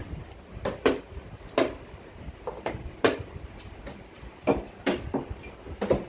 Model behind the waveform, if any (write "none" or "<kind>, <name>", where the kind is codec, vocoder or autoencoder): none